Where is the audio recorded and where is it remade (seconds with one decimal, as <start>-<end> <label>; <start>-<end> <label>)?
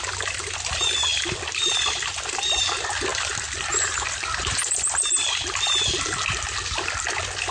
0.0-3.1 recorded; 3.1-5.3 remade; 5.3-7.5 recorded